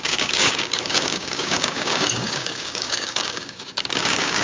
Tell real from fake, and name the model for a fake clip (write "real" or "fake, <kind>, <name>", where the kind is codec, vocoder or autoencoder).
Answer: fake, codec, DAC